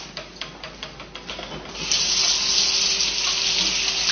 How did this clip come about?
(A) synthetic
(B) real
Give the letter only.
A